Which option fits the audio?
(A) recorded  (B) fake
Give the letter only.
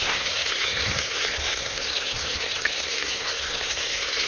B